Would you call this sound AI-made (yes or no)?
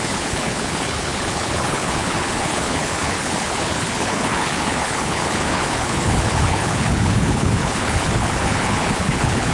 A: yes